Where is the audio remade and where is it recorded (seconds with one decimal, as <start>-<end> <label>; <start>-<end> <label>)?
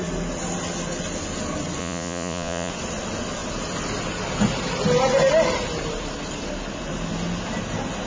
0.0-1.8 recorded; 1.8-2.7 remade; 2.7-8.1 recorded